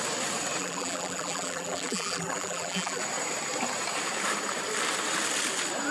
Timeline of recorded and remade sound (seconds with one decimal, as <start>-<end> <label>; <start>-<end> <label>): 0.0-0.6 recorded; 0.6-3.0 remade; 3.0-5.9 recorded